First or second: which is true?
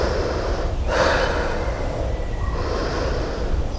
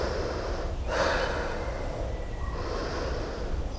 second